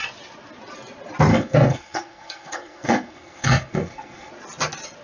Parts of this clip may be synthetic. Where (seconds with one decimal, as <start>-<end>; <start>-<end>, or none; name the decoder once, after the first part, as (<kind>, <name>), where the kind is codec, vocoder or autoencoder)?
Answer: 1.3-4.3 (codec, SNAC)

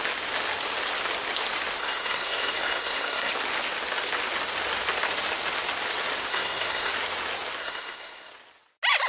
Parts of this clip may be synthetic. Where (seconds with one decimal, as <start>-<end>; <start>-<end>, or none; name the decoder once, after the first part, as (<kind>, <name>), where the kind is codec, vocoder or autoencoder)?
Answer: 1.8-3.3 (codec, SNAC); 6.3-6.9; 7.6-8.3

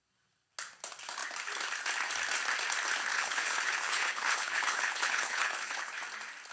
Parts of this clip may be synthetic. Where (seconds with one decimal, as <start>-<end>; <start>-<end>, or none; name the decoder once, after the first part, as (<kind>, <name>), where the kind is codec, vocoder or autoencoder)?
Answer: 3.1-5.9 (codec, HILCodec)

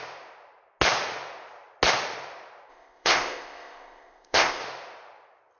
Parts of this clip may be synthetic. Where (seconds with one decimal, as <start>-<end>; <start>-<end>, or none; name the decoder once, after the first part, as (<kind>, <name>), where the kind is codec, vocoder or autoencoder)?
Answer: 2.7-4.6 (codec, ZipCodec)

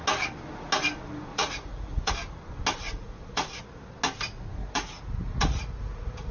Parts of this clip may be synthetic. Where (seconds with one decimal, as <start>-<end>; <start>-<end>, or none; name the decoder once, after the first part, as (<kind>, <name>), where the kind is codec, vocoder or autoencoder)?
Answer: 1.3-2.1 (vocoder, Vocos); 2.8-3.6; 4.6-6.3

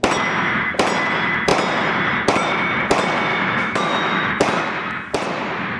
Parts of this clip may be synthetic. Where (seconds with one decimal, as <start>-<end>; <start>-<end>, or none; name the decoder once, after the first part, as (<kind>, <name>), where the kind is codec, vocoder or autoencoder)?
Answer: 3.3-4.3 (autoencoder, DAC-VAE)

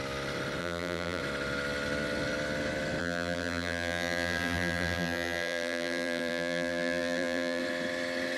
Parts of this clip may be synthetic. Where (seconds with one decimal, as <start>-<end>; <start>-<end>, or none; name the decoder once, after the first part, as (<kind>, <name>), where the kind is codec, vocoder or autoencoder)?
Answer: 0.6-1.2 (vocoder, BigVGAN v2); 3.0-7.6

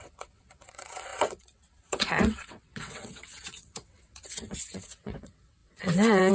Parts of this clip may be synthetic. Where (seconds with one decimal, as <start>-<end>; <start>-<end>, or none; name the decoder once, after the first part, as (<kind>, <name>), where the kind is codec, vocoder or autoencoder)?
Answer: 0.0-6.3 (vocoder, WaveNeXt)